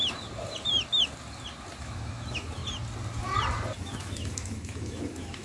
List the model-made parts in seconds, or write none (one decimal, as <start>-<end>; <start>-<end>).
1.8-2.6; 3.8-5.4